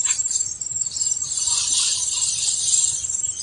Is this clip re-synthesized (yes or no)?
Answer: no